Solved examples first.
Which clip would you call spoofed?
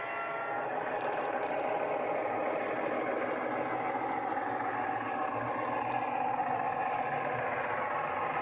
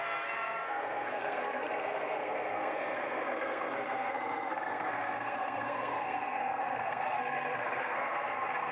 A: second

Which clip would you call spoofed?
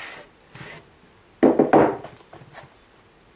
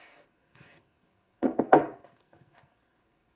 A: second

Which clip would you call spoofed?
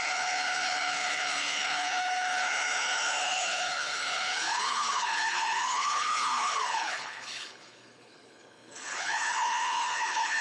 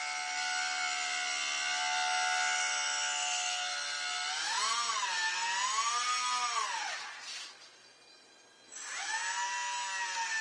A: first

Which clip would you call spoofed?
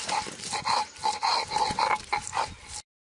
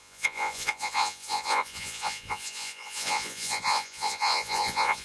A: second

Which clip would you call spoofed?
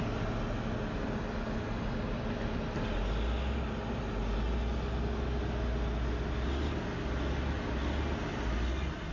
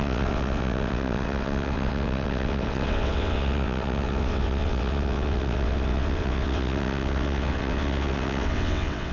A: second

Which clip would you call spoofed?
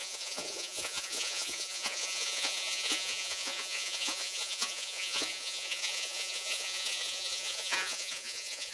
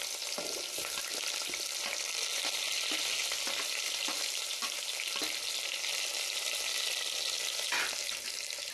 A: first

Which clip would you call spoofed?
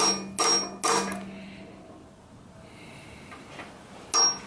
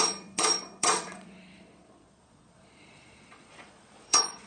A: second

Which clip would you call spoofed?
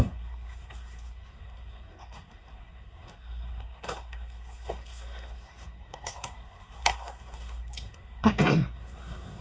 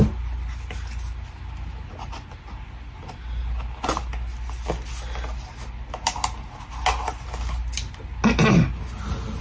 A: first